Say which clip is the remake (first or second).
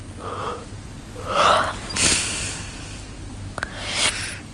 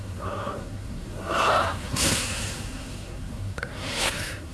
second